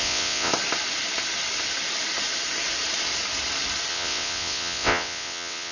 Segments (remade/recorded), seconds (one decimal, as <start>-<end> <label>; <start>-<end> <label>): 0.0-0.5 remade; 0.5-3.9 recorded; 3.9-5.7 remade